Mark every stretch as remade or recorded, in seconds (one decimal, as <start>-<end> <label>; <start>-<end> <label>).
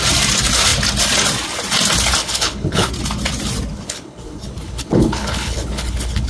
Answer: 0.0-2.2 recorded; 2.2-2.9 remade; 2.9-3.7 recorded; 3.7-6.3 remade